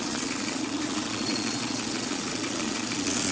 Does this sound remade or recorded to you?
remade